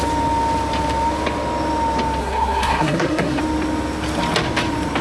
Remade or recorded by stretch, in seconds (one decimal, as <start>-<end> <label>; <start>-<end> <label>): 0.0-2.2 recorded; 2.2-3.4 remade; 3.4-5.0 recorded